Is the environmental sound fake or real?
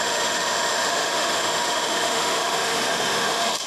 fake